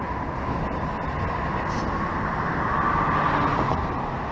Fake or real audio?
real